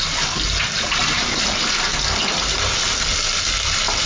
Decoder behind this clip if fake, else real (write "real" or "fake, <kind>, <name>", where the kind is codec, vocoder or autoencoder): real